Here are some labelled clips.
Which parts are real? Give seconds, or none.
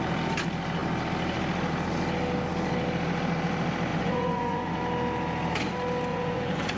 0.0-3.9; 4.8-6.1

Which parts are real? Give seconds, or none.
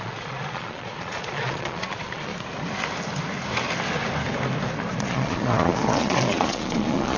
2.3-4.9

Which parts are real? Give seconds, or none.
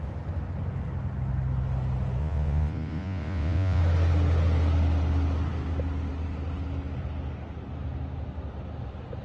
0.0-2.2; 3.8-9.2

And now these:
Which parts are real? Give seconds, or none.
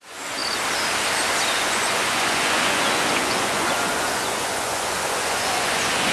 0.4-1.5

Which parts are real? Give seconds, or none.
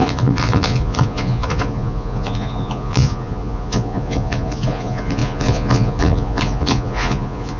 none